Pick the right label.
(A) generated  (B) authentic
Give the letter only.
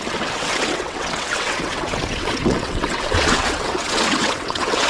A